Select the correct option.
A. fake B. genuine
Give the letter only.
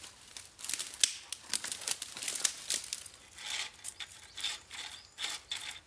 B